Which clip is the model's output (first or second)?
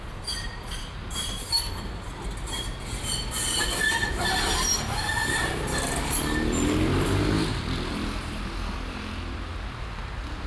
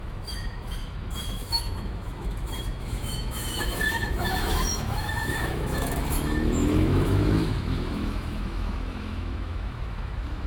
second